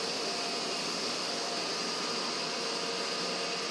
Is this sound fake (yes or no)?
no